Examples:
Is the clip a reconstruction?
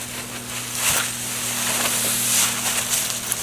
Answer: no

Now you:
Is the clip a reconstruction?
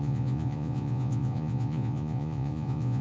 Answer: yes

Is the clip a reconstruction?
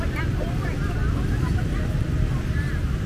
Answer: no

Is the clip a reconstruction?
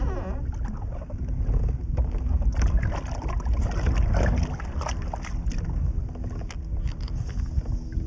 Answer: no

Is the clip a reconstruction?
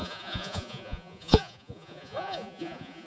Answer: yes